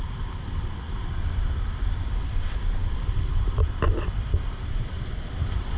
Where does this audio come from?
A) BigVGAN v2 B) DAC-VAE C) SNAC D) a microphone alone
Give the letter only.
D